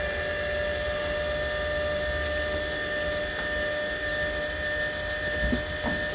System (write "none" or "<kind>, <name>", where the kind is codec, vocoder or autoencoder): none